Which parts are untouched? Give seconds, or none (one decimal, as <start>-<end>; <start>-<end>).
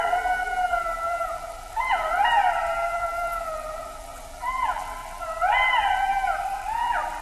none